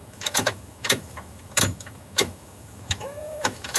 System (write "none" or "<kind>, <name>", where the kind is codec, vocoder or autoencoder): autoencoder, DAC-VAE